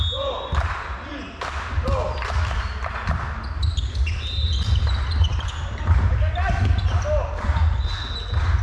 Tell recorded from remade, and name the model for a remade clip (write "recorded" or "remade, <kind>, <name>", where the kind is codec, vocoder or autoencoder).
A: recorded